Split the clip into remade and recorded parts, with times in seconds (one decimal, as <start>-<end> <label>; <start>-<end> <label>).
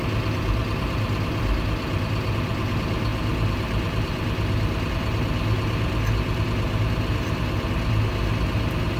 0.0-9.0 recorded